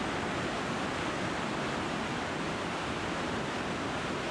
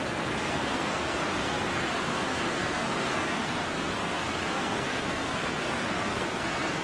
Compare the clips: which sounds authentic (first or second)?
first